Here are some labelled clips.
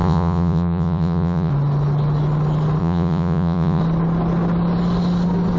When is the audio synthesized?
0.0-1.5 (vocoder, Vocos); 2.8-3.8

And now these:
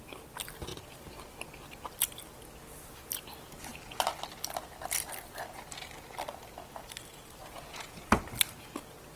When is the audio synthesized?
7.4-8.2 (vocoder, Vocos)

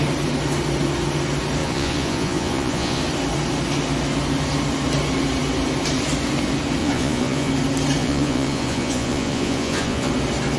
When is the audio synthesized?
1.6-3.0 (vocoder, Vocos); 6.8-7.5; 8.0-10.1

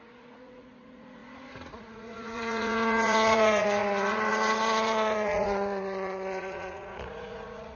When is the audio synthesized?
0.0-7.8 (vocoder, Vocos)

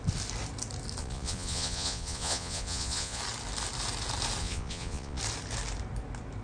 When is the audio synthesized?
1.0-3.2 (vocoder, Vocos); 4.4-5.2